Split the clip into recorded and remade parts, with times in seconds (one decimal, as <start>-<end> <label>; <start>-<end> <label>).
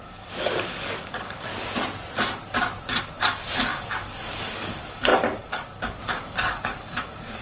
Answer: 0.0-1.5 remade; 1.5-3.0 recorded; 3.0-7.4 remade